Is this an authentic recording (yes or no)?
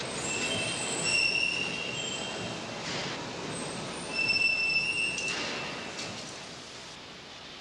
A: yes